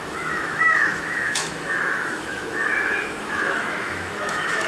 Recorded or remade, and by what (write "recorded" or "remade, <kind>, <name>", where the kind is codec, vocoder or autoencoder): remade, autoencoder, DAC-VAE